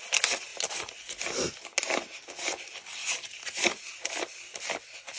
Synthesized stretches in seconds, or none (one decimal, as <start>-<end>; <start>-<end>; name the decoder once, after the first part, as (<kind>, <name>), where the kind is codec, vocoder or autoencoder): none